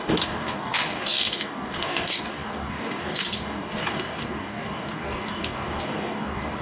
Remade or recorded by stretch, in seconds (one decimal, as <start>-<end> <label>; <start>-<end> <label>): 0.0-6.6 remade